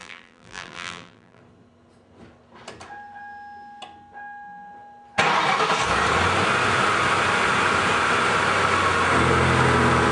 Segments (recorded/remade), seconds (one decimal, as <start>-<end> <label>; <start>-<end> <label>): 0.0-1.4 remade; 1.4-10.1 recorded